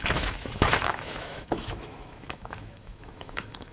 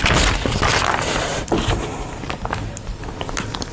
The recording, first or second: second